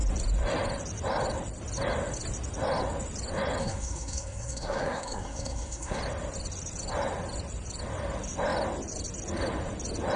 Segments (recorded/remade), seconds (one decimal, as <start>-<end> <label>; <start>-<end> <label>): 0.0-3.6 recorded; 3.6-6.0 remade; 6.0-10.2 recorded